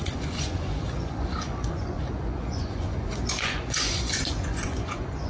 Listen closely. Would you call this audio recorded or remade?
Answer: remade